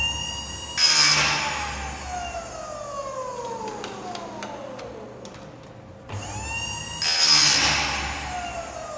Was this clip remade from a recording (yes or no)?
no